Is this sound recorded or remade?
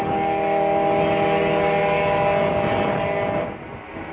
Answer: recorded